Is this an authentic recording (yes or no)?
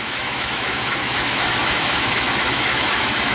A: no